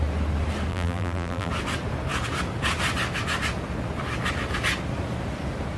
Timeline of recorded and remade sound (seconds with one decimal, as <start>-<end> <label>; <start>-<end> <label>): 0.0-0.7 recorded; 0.7-1.5 remade; 1.5-5.8 recorded